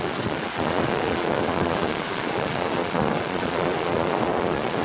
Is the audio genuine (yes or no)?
no